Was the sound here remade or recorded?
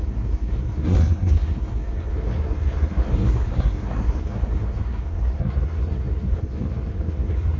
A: remade